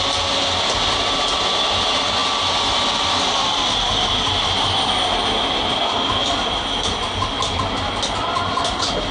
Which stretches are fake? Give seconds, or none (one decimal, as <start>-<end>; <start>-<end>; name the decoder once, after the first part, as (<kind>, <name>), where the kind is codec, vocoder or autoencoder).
none